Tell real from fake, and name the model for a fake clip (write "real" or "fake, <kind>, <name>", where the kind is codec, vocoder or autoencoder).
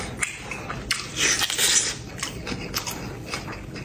real